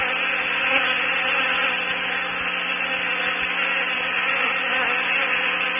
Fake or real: real